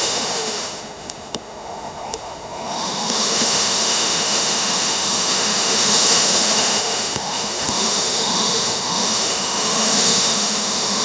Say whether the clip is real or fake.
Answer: fake